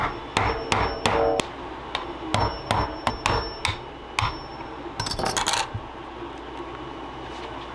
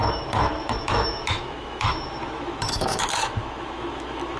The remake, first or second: second